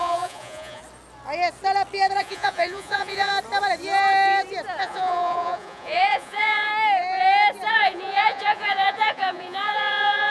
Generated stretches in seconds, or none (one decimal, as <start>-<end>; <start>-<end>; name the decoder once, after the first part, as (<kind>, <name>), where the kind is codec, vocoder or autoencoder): 0.0-0.8 (vocoder, Vocos); 2.2-3.3; 4.8-6.7; 7.7-10.3

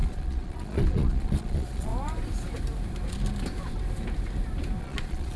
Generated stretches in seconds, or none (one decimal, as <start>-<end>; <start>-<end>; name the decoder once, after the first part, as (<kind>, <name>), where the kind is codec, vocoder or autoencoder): 0.0-1.9 (vocoder, Vocos); 4.8-5.4